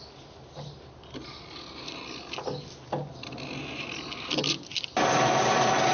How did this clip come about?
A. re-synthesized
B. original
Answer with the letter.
B